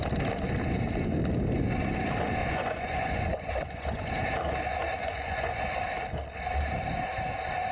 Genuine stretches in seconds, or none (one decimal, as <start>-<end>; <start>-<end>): 0.0-2.4; 4.1-5.0; 5.6-7.7